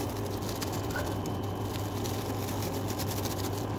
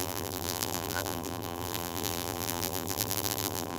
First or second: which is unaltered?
first